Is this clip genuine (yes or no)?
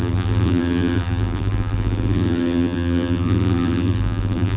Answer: no